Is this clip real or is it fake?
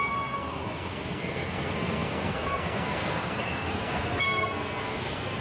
fake